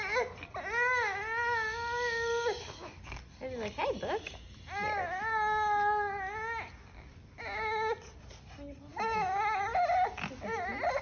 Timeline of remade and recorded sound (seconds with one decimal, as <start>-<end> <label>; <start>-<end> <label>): 0.0-11.0 recorded